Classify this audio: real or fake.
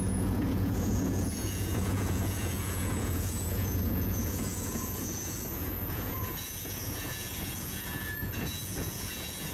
fake